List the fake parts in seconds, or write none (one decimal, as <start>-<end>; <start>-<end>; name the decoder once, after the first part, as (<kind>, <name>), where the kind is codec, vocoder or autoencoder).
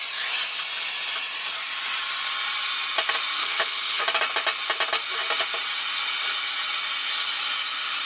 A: 3.4-4.0 (codec, HILCodec)